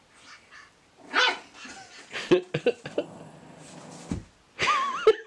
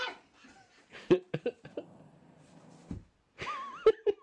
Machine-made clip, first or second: second